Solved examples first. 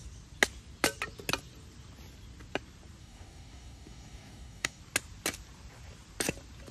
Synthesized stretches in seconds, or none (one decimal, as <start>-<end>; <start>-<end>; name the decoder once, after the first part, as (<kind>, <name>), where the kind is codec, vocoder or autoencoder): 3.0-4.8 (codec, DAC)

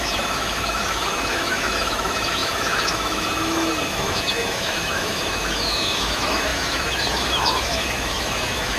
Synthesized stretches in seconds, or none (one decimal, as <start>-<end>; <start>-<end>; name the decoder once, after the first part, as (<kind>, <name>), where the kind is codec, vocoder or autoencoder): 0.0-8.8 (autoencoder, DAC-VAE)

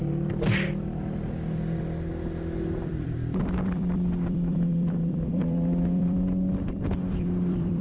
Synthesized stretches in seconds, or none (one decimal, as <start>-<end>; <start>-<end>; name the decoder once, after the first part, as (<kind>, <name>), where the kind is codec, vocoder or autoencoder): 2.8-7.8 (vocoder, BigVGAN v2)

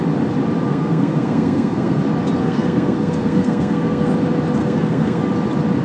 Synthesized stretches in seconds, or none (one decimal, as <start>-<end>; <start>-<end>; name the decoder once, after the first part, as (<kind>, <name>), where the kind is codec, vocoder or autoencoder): 0.7-2.0 (codec, SNAC); 2.4-4.1; 4.6-5.2

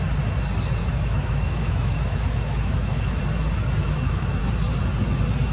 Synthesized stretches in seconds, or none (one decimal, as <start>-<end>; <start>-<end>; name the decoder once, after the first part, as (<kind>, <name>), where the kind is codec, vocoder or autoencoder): 0.8-3.2 (autoencoder, DAC-VAE); 3.8-4.4

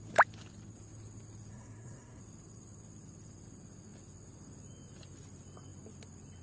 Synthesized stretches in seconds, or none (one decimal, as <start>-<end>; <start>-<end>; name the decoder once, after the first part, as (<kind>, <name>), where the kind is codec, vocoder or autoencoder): 1.5-2.2 (codec, SNAC)